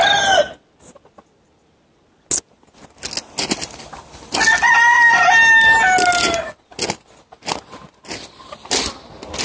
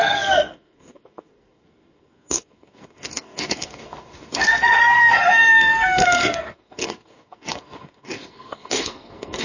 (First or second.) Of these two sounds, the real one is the first